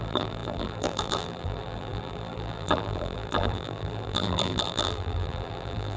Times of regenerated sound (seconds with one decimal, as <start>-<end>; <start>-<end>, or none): 0.0-6.0